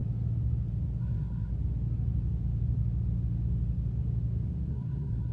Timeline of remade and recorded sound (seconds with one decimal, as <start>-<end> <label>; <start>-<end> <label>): 0.0-1.0 recorded; 1.0-1.5 remade; 1.5-4.7 recorded; 4.7-5.3 remade